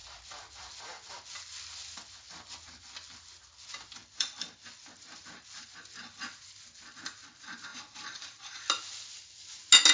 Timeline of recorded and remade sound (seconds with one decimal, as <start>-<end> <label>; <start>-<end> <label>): 0.0-4.0 recorded; 4.0-5.7 remade; 5.7-9.9 recorded